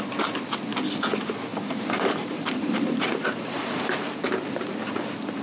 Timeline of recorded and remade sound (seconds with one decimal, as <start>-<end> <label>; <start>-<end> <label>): 0.0-1.5 recorded; 1.5-4.0 remade; 4.0-5.4 recorded